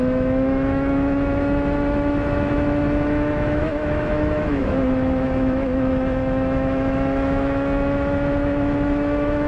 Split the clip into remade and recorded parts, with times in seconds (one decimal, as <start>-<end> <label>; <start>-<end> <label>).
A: 0.0-9.5 remade